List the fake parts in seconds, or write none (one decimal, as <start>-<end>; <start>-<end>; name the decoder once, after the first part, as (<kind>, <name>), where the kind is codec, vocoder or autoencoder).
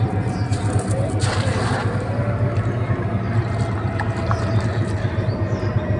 none